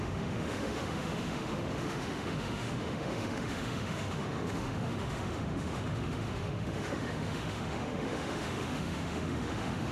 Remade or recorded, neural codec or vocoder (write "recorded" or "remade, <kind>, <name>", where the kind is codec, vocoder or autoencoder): remade, autoencoder, DAC-VAE